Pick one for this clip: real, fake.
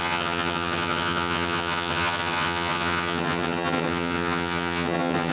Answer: fake